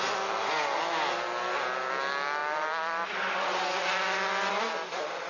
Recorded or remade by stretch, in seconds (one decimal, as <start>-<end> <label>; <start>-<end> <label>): 0.0-5.3 recorded